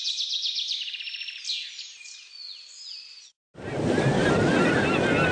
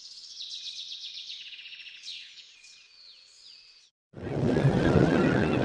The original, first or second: first